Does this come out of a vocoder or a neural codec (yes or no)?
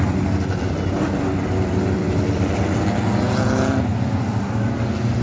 no